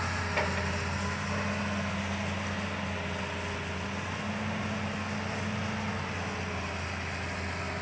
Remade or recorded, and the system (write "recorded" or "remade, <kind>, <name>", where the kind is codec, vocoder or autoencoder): recorded